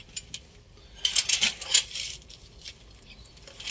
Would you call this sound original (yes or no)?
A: yes